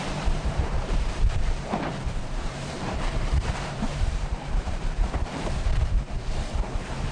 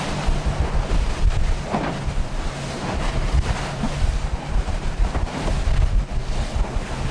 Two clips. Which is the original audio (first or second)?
second